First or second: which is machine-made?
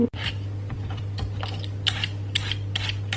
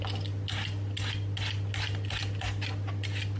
first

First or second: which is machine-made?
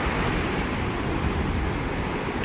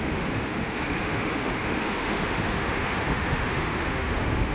second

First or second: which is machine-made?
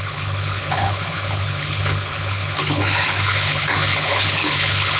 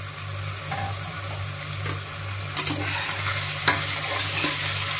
first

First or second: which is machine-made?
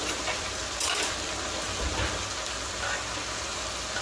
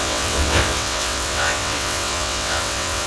second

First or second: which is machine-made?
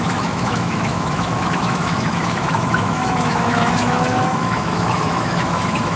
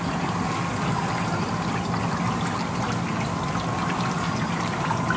first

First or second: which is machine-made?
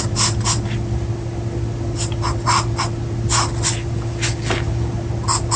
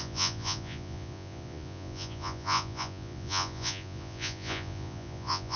second